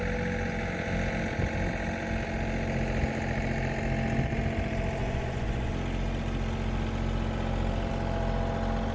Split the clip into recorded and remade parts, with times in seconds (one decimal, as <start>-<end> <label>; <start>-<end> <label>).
0.0-5.0 recorded; 5.0-5.7 remade; 5.7-8.9 recorded